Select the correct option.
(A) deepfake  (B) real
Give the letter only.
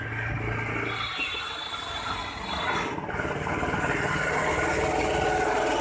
B